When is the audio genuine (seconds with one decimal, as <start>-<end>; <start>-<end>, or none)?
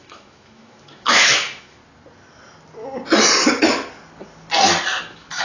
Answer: 1.8-5.0